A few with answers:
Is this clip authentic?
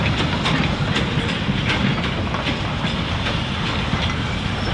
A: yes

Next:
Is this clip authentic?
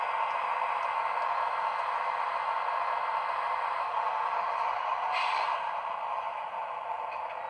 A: yes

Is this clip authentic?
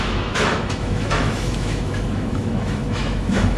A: no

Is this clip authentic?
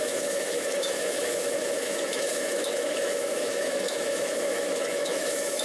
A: no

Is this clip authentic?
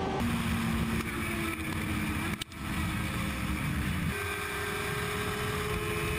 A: yes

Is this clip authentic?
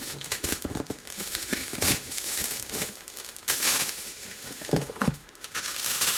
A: no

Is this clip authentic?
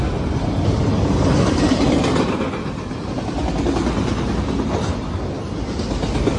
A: yes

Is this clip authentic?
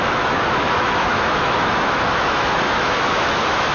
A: no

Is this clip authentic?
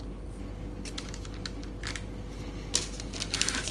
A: yes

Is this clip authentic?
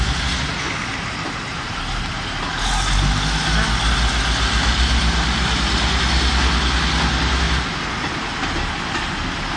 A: yes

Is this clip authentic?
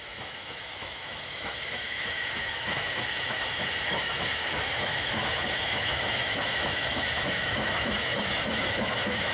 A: no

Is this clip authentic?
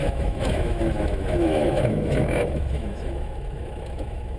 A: no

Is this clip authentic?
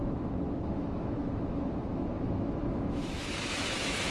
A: no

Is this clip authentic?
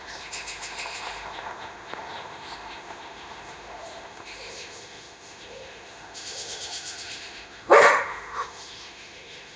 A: no